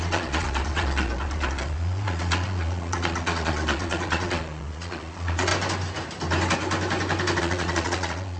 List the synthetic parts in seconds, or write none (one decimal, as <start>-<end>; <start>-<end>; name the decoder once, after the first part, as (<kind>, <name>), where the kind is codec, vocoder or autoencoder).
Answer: 0.0-5.5 (vocoder, Vocos); 7.4-8.4